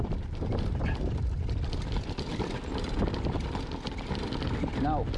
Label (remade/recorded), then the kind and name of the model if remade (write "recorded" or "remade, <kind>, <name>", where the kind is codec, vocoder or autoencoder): recorded